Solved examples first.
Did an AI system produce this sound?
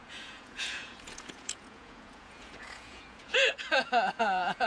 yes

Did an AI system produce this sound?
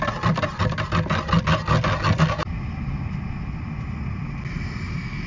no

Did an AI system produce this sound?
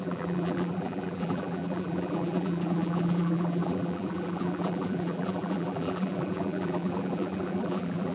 yes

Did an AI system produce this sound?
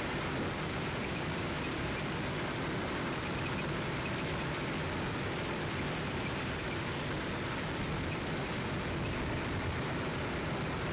yes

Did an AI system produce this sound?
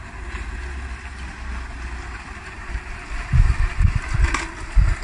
no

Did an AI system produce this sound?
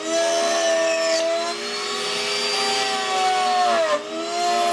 no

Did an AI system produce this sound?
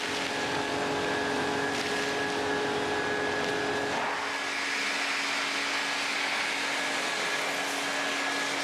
no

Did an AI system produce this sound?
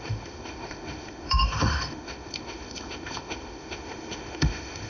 yes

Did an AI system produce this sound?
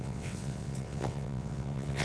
yes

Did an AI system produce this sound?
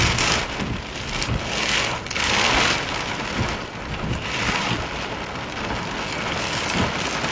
no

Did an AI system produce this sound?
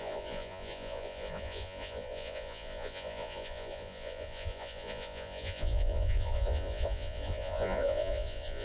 yes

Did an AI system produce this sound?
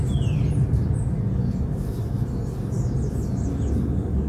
no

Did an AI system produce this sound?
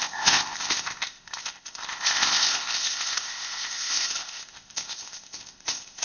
yes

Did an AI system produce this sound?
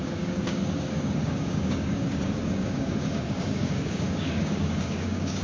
yes